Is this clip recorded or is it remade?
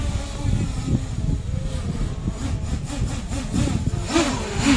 recorded